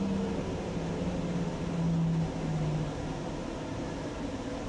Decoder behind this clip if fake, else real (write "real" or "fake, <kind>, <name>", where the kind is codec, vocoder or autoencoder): real